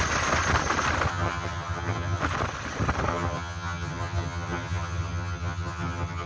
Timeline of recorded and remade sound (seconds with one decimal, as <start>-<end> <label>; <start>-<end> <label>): 0.0-1.1 recorded; 1.1-2.2 remade; 2.2-3.1 recorded; 3.1-6.3 remade

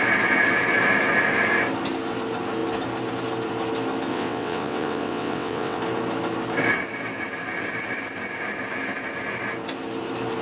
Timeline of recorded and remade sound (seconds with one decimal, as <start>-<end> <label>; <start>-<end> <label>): 0.0-4.1 recorded; 4.1-5.8 remade; 5.8-10.4 recorded

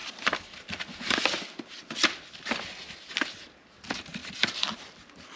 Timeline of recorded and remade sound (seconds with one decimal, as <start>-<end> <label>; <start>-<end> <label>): 0.0-5.4 recorded